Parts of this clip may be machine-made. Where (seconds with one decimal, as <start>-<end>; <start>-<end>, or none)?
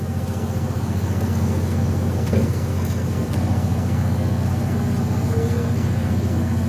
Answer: 0.0-6.7